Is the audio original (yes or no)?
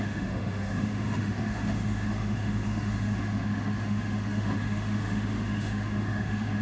no